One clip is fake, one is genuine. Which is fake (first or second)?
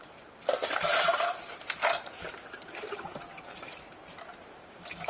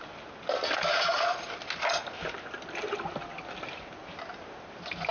first